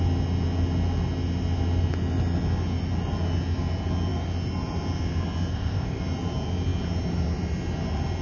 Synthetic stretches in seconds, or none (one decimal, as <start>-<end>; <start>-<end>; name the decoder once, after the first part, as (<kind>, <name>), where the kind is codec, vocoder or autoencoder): 5.5-6.0 (codec, ZipCodec)